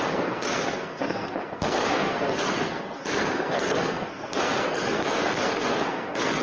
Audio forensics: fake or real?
fake